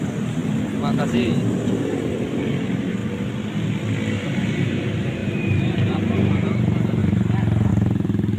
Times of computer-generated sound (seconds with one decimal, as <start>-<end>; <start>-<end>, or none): 0.0-3.0; 4.1-7.0; 7.7-8.4